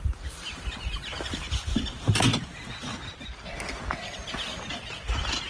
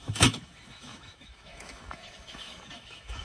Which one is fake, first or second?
second